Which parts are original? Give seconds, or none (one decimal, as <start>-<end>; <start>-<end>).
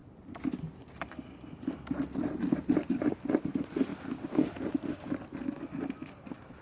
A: 0.0-6.6